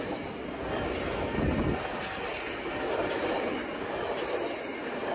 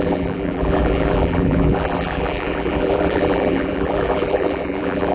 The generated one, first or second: second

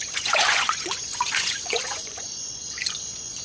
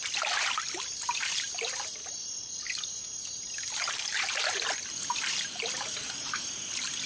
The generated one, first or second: first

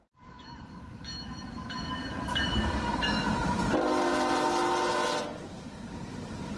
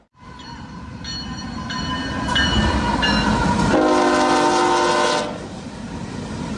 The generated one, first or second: first